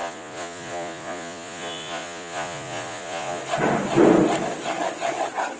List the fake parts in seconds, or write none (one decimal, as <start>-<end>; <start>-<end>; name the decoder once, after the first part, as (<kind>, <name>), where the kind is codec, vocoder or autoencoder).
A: 0.0-3.4 (vocoder, Vocos)